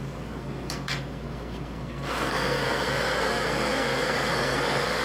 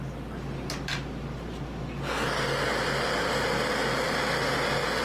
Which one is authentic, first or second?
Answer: second